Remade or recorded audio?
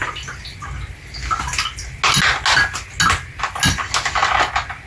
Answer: recorded